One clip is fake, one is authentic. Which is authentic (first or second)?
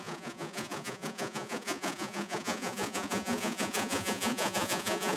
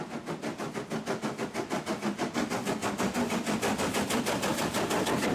second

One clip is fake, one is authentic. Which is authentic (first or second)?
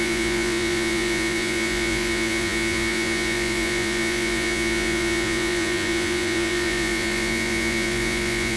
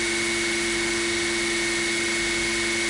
second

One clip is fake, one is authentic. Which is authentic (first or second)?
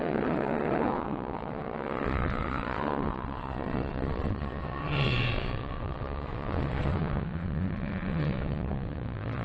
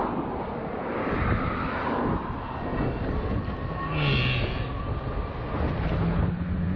second